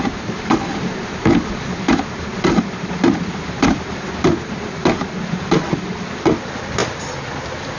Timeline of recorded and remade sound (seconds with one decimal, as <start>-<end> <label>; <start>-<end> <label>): 0.0-7.8 recorded